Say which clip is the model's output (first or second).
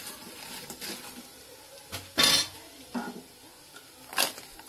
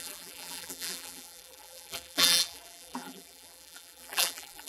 second